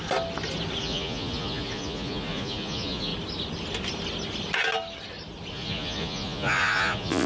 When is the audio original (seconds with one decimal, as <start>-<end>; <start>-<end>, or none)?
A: 0.0-0.8; 3.1-5.5